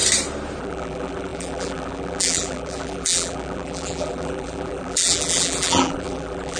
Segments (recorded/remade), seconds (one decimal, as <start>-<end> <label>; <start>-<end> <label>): 0.0-0.6 recorded; 0.6-6.6 remade